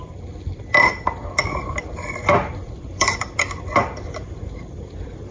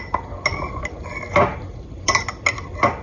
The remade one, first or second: first